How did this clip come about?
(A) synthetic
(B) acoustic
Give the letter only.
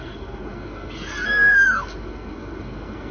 A